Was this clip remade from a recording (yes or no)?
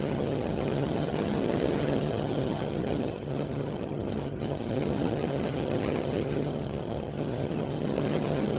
yes